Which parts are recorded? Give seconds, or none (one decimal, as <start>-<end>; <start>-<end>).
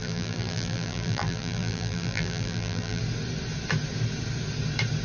3.0-5.0